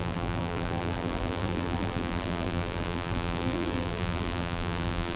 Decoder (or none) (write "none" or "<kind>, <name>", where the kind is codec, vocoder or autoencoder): vocoder, BigVGAN v2